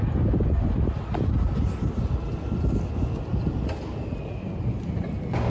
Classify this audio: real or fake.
real